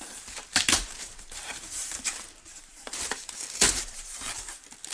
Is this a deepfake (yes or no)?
yes